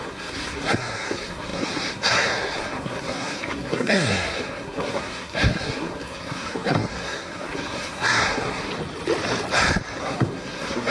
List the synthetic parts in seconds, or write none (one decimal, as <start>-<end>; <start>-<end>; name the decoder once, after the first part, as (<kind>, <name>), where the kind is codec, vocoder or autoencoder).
0.0-8.7 (codec, SNAC); 10.0-10.9